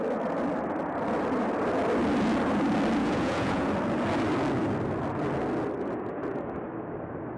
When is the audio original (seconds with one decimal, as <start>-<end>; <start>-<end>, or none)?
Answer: 0.0-3.0; 3.7-7.4